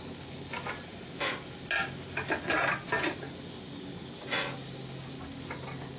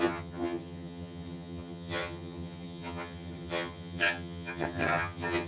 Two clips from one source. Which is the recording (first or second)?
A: first